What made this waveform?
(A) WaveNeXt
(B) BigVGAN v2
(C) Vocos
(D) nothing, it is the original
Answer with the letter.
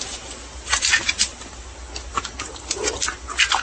D